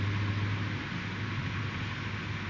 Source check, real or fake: real